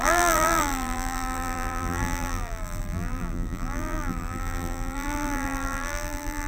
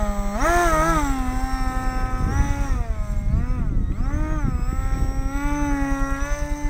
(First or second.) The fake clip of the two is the first